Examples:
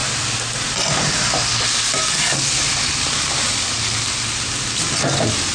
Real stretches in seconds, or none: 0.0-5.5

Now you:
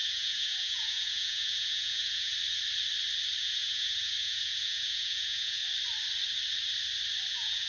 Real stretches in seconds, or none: 2.3-3.4; 5.6-7.3

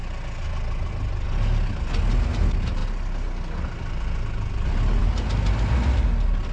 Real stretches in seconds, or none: 0.0-6.5

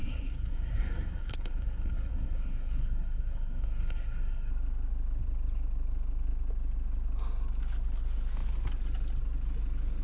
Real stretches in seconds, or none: 4.5-10.0

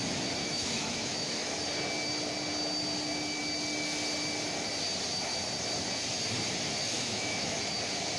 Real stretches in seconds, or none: 0.0-0.4; 1.6-6.9; 7.6-8.2

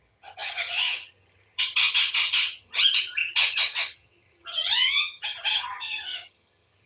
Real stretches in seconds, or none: none

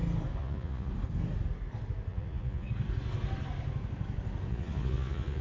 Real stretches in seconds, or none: 0.0-0.4; 0.9-2.1; 2.7-4.5

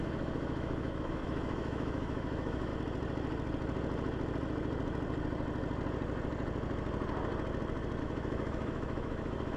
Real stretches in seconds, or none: 2.7-8.0